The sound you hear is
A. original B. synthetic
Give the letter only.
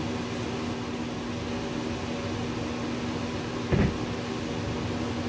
A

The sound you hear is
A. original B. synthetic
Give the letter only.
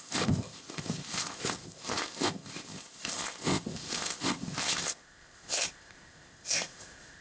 B